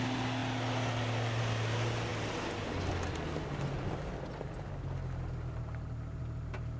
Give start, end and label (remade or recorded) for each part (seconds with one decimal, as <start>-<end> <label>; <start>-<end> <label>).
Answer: 0.0-6.8 recorded